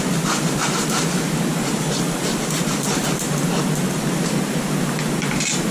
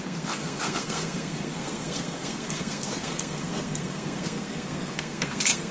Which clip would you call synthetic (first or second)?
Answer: second